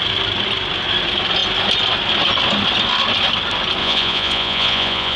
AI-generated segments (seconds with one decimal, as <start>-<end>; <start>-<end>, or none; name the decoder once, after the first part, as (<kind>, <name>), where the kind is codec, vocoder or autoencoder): 3.8-5.2 (vocoder, Vocos)